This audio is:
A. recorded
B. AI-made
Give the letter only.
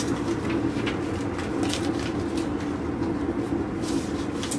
A